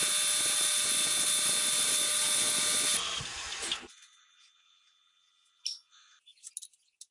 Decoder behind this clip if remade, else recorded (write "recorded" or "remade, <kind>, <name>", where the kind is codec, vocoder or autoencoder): recorded